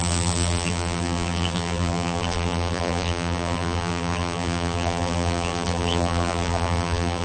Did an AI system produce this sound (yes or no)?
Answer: yes